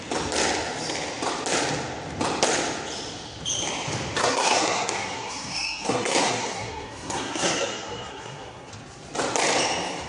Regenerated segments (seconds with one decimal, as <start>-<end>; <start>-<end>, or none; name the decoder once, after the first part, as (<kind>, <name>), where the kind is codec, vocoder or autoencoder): 4.2-8.7 (codec, SNAC)